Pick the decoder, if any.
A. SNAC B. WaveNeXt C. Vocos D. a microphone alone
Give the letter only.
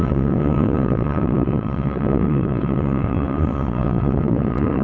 B